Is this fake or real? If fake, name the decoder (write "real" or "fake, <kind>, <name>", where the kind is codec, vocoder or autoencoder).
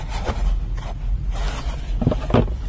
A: real